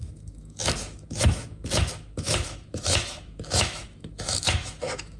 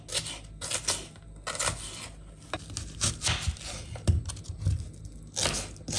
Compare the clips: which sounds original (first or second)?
second